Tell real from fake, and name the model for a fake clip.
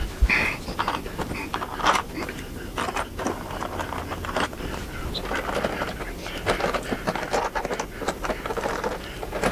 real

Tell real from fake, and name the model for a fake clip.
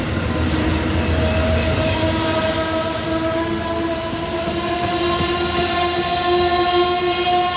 real